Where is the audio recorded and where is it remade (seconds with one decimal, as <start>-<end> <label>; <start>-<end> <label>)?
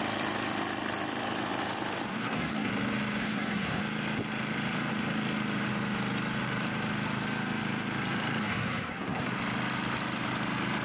0.0-2.1 recorded; 2.1-2.7 remade; 2.7-3.2 recorded; 3.2-3.8 remade; 3.8-8.4 recorded; 8.4-9.3 remade; 9.3-10.8 recorded